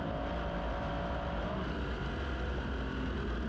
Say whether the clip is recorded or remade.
recorded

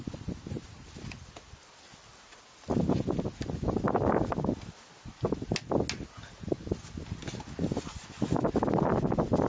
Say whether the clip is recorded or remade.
recorded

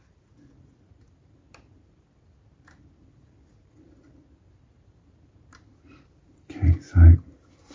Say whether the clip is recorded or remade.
recorded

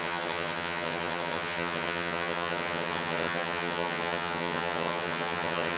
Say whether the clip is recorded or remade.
remade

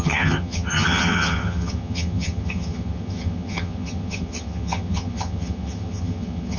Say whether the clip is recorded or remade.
remade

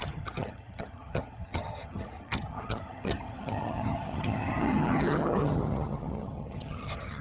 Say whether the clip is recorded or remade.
remade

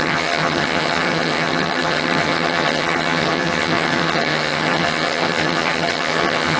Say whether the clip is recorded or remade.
remade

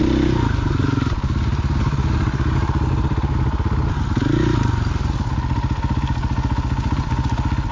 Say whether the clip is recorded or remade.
recorded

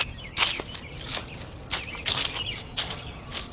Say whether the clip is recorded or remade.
recorded